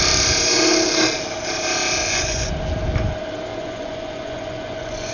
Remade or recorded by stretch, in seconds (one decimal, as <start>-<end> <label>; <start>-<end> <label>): 0.0-2.0 recorded; 2.0-2.5 remade; 2.5-3.5 recorded; 3.5-5.1 remade